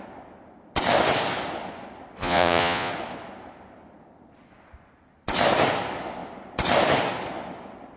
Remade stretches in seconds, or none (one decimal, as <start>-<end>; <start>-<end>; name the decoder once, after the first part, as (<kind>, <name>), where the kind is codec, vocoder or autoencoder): 2.2-2.9 (vocoder, Vocos)